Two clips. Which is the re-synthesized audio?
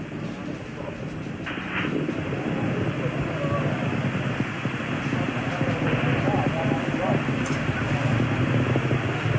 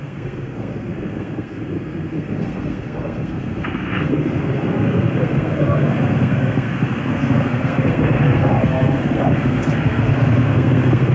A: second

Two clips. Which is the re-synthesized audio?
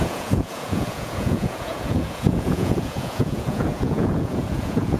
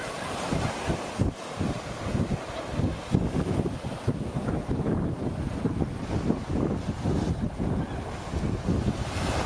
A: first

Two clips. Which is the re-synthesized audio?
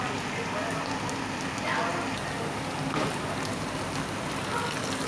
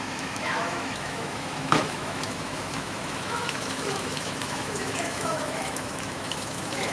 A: second